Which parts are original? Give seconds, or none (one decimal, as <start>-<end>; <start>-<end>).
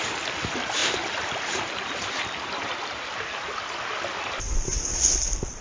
0.0-5.6